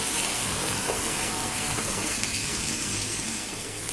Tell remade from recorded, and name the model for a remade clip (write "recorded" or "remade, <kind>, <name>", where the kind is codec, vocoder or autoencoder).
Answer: remade, codec, SNAC